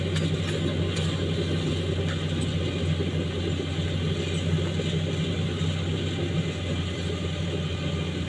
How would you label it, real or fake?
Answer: real